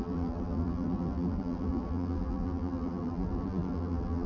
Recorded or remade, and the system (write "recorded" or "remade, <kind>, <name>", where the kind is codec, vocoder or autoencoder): remade, vocoder, BigVGAN v2